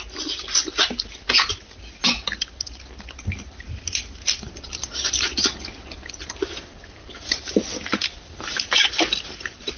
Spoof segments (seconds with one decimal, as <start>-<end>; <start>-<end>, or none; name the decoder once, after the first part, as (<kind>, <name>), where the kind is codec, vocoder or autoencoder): 7.0-7.5 (vocoder, BigVGAN v2); 7.9-9.8